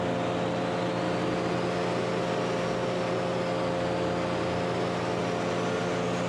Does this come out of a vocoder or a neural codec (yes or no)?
no